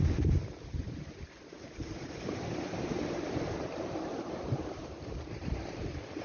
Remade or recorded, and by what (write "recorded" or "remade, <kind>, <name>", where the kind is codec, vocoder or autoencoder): remade, vocoder, BigVGAN v2